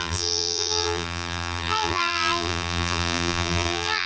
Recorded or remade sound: remade